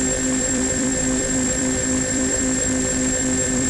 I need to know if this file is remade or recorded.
remade